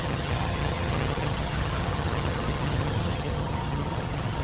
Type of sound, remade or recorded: remade